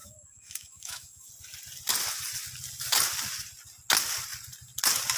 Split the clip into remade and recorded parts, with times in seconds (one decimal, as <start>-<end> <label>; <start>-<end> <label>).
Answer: 0.0-1.3 remade; 1.3-5.2 recorded